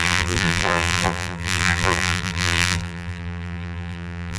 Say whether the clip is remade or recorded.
remade